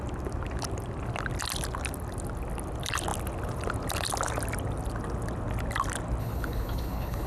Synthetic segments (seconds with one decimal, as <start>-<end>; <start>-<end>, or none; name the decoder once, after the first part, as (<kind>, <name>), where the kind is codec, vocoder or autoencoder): 6.2-7.3 (codec, HILCodec)